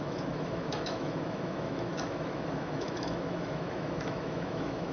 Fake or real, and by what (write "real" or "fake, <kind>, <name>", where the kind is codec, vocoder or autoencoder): fake, autoencoder, DAC-VAE